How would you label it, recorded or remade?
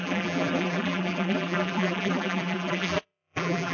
remade